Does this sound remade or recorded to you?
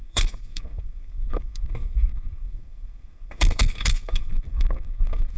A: remade